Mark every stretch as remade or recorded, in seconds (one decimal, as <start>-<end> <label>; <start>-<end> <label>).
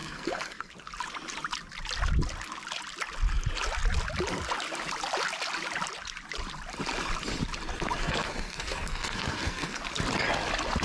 0.0-0.7 remade; 0.7-8.0 recorded; 8.0-9.8 remade; 9.8-10.8 recorded